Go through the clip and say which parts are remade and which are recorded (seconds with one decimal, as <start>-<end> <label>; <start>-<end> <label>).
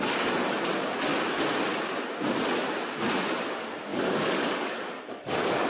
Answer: 0.0-3.9 recorded; 3.9-5.7 remade